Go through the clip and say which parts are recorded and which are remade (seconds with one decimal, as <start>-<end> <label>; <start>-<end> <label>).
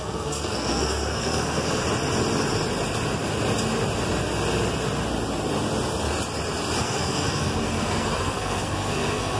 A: 0.0-1.8 remade; 1.8-6.8 recorded; 6.8-9.4 remade